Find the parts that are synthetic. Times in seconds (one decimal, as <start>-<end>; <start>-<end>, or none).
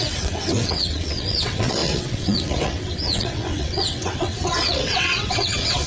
0.0-5.9